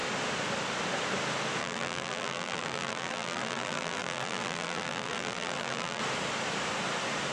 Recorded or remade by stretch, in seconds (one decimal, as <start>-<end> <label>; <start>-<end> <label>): 0.0-1.6 recorded; 1.6-6.0 remade; 6.0-7.3 recorded